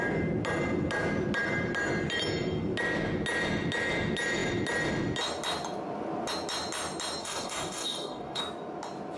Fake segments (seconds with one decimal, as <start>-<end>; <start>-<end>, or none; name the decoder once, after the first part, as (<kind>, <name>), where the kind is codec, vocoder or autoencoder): 7.2-8.4 (codec, DAC)